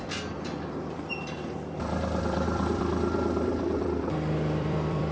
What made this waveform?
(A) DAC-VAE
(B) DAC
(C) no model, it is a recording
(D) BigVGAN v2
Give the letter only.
D